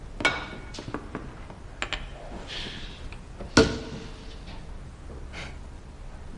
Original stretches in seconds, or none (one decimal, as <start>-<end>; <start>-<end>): 0.0-6.4